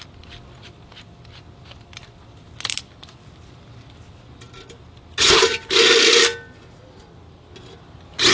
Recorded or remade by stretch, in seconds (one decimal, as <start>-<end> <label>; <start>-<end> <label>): 0.0-8.3 recorded